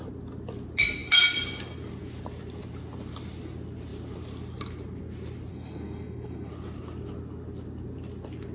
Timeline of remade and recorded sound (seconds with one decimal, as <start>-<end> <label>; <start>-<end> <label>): 0.0-5.5 recorded; 5.5-6.5 remade; 6.5-8.5 recorded